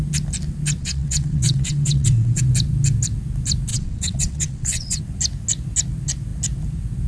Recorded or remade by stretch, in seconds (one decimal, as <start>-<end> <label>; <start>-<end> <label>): 0.0-0.8 recorded; 0.8-2.4 remade; 2.4-3.7 recorded; 3.7-5.0 remade; 5.0-7.1 recorded